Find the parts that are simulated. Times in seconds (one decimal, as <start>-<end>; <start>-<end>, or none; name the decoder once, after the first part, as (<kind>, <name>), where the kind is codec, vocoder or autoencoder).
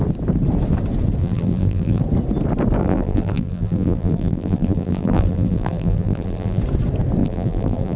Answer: 1.2-2.0 (vocoder, BigVGAN v2); 2.8-6.6; 7.2-8.0